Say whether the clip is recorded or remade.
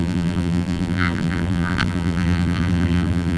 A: remade